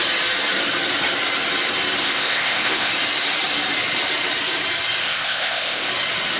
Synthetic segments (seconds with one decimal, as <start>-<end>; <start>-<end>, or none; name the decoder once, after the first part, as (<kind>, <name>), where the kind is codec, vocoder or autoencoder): 2.0-2.9 (codec, ZipCodec); 5.0-5.9